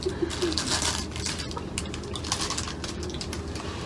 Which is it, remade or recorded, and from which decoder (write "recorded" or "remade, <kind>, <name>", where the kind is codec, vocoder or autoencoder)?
recorded